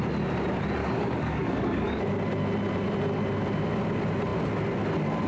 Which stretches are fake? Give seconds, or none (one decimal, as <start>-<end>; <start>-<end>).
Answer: 0.8-2.0